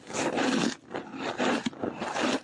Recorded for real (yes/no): no